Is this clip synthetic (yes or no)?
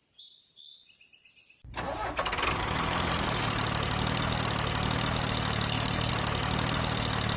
no